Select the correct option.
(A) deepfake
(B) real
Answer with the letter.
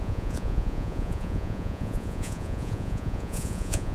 A